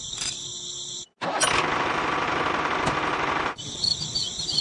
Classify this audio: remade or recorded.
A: recorded